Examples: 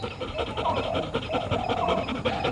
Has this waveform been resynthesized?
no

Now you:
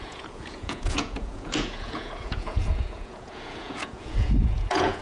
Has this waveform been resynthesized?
yes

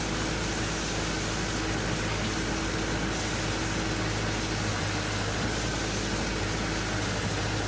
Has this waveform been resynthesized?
no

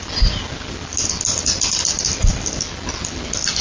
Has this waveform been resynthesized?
no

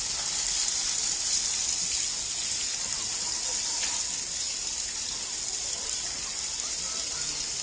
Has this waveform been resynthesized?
no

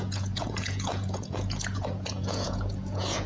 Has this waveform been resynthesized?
yes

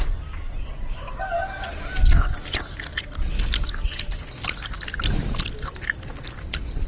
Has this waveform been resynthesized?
no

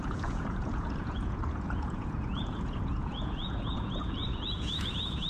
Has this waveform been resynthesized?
yes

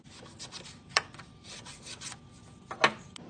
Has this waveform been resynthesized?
no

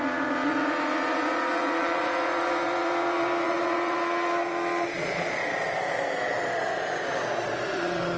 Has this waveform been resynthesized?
yes